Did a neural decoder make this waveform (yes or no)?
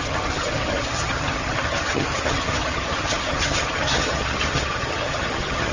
yes